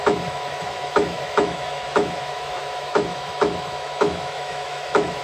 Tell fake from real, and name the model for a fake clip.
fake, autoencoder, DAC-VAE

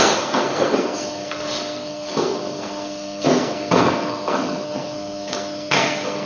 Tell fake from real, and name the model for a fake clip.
fake, codec, SNAC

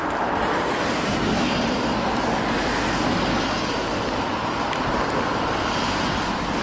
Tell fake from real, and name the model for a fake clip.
real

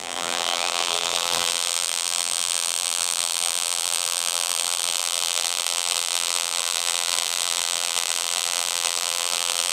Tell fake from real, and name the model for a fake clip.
fake, vocoder, BigVGAN v2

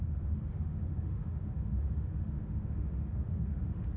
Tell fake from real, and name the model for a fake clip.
fake, autoencoder, DAC-VAE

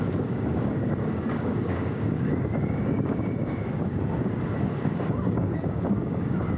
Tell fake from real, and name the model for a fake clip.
fake, codec, DAC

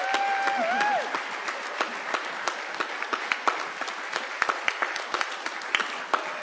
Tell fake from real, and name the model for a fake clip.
real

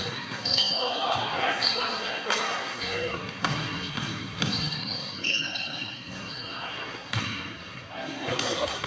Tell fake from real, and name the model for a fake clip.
fake, codec, SNAC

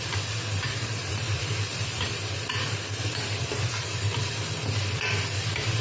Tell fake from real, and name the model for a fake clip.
fake, vocoder, BigVGAN v2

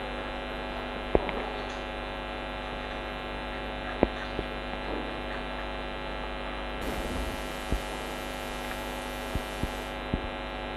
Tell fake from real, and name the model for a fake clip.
real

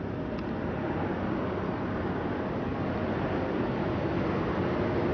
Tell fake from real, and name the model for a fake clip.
real